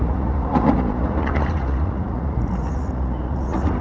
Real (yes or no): no